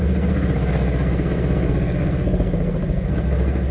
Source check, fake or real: fake